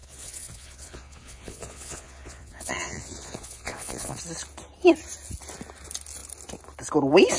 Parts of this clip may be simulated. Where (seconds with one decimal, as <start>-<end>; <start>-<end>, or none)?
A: 0.0-4.2